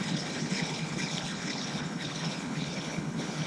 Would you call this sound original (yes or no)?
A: no